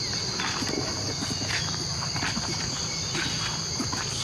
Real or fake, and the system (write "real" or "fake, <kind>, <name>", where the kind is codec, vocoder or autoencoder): real